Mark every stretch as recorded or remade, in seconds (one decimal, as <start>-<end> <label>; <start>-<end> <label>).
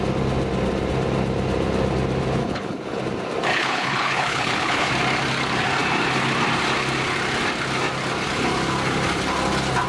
0.0-2.4 recorded; 2.4-3.0 remade; 3.0-3.5 recorded; 3.5-4.9 remade; 4.9-9.9 recorded